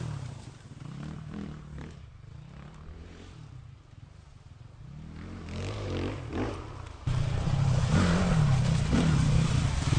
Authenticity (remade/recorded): recorded